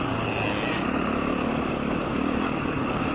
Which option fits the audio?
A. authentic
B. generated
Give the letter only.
A